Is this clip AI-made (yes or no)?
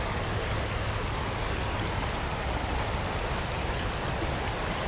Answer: no